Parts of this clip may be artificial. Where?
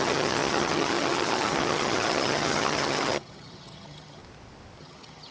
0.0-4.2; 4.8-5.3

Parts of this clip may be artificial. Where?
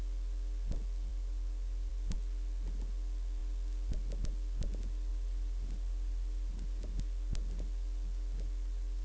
1.1-1.9; 5.1-7.0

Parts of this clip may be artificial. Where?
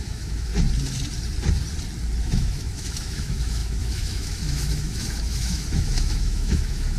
0.0-0.5; 2.2-7.0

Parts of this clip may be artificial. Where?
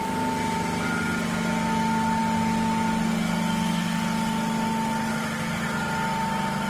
none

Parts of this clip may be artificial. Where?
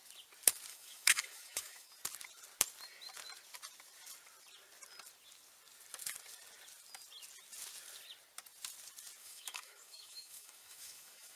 0.7-1.9; 9.2-11.4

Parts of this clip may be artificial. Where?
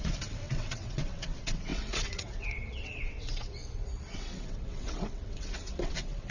0.0-6.3